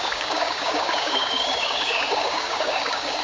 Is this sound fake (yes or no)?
yes